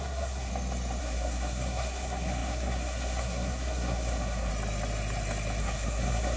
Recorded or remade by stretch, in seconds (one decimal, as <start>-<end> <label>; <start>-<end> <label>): 0.0-0.5 remade; 0.5-1.0 recorded; 1.0-4.5 remade; 4.5-5.6 recorded; 5.6-6.4 remade